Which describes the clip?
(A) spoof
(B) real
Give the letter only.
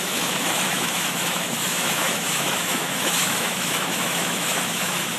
A